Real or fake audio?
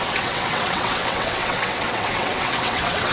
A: fake